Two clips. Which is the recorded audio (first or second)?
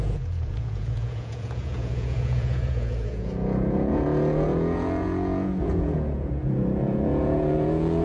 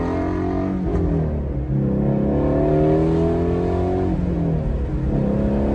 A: second